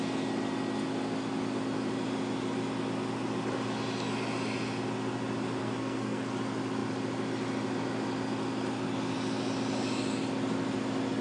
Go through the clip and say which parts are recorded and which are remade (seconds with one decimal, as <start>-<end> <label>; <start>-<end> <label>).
0.0-5.6 recorded; 5.6-6.2 remade; 6.2-11.2 recorded